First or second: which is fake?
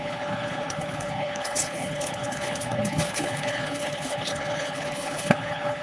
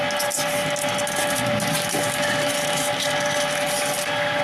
first